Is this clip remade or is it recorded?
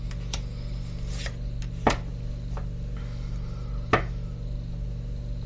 recorded